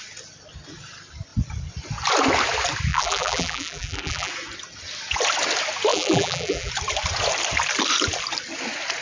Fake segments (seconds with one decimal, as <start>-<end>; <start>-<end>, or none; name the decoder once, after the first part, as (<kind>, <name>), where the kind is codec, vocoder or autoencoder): 2.9-4.3 (vocoder, BigVGAN v2); 5.9-6.7